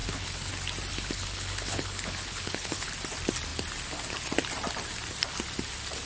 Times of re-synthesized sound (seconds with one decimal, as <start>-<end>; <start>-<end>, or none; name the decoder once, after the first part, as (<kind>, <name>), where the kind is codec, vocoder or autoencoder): 0.0-0.5 (codec, HILCodec); 0.9-2.9